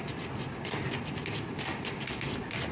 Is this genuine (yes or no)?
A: yes